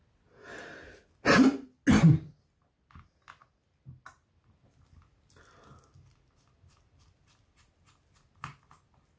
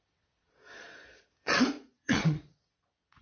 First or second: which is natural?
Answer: first